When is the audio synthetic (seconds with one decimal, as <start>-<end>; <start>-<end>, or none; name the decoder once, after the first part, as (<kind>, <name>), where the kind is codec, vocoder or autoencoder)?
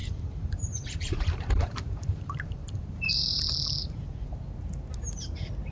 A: 0.0-3.4 (vocoder, BigVGAN v2); 3.8-4.4